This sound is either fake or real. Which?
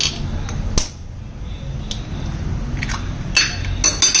real